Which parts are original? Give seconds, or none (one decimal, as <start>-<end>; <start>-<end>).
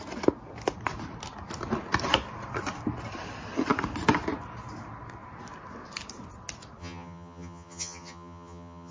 0.0-6.8